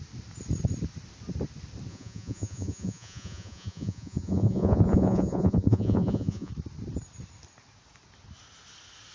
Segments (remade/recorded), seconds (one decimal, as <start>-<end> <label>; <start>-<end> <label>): 0.0-1.9 recorded; 1.9-6.5 remade; 6.5-9.1 recorded